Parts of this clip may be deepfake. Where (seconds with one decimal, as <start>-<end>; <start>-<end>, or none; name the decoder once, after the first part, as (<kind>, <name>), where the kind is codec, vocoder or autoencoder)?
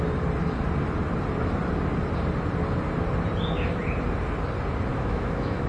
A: 4.9-5.7 (autoencoder, DAC-VAE)